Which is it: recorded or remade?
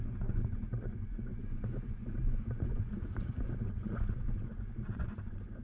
remade